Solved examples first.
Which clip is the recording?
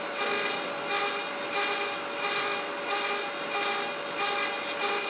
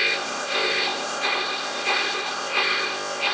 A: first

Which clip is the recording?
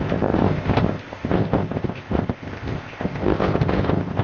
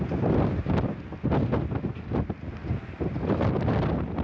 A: second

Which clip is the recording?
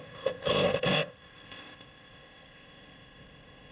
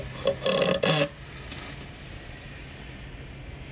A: second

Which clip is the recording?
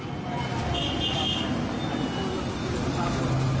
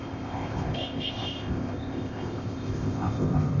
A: first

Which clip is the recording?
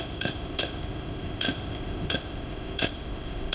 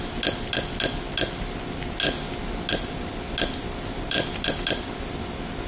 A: second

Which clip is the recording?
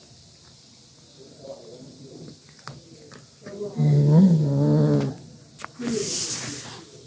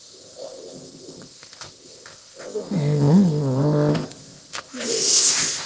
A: first